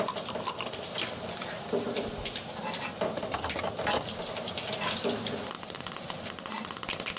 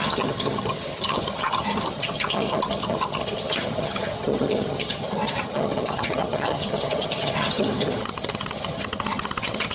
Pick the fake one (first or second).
second